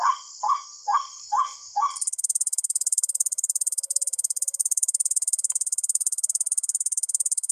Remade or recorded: remade